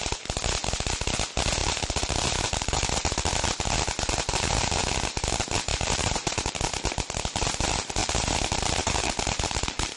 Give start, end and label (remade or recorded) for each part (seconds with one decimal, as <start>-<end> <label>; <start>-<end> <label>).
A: 0.0-1.6 recorded; 1.6-3.3 remade; 3.3-5.7 recorded; 5.7-6.5 remade; 6.5-8.0 recorded; 8.0-10.0 remade